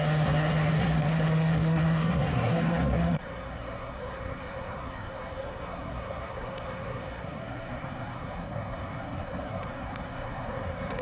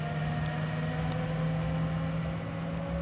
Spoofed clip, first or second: first